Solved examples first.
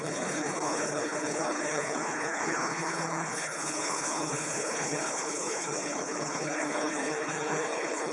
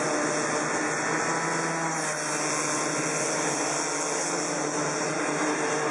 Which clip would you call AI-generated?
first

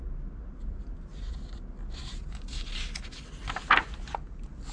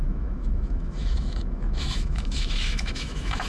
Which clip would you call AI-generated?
second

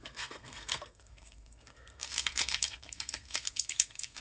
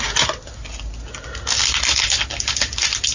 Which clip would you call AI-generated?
first